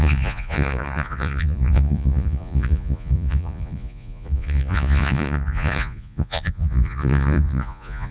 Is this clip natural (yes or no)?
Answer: no